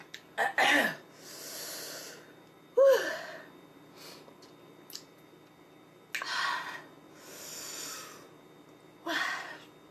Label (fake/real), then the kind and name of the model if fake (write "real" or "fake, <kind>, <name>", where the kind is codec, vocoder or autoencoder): real